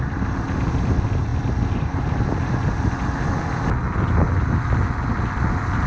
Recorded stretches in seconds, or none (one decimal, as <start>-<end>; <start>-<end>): 0.0-5.9